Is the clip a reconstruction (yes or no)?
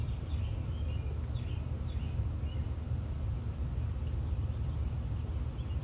no